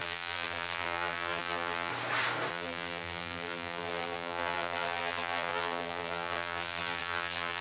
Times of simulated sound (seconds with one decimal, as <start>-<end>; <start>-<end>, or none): 0.0-1.9; 2.5-7.6